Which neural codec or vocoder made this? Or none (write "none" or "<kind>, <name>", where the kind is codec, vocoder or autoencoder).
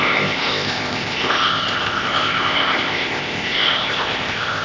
codec, ZipCodec